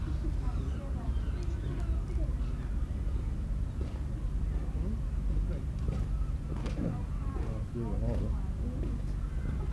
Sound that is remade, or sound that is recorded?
recorded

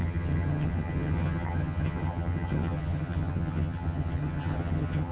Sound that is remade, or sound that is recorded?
remade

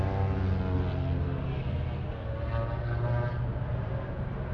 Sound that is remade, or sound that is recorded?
recorded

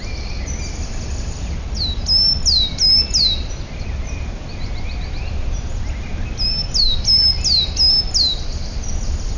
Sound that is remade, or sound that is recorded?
recorded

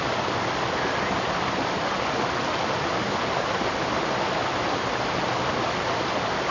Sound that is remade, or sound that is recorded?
recorded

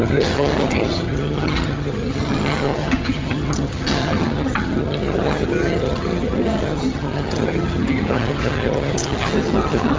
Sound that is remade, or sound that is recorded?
remade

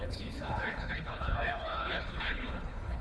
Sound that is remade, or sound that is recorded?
remade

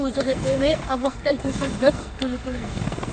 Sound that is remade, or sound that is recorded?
remade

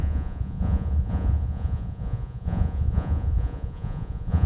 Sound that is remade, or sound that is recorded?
remade